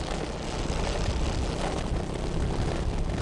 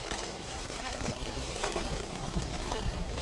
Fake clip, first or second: second